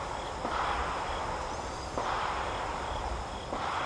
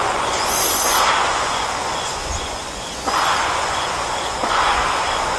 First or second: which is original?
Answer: first